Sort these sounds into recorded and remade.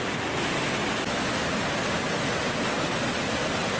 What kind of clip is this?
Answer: recorded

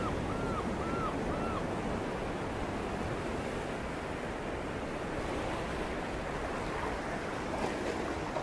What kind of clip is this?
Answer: recorded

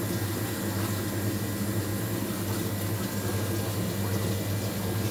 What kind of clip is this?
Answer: recorded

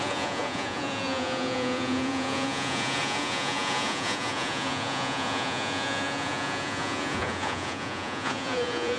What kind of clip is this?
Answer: remade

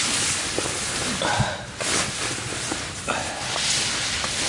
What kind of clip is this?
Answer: recorded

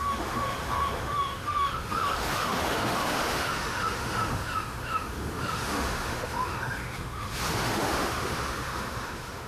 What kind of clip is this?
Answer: remade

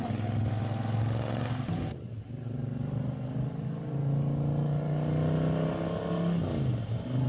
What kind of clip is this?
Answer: recorded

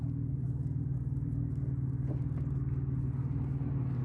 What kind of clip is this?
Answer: recorded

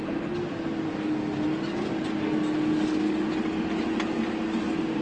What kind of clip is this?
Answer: recorded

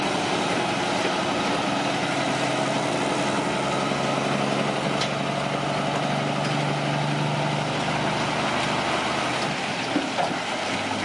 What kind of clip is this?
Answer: recorded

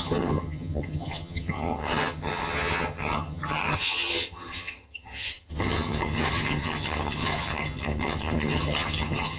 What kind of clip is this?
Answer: remade